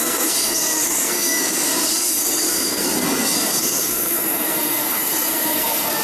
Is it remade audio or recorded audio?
remade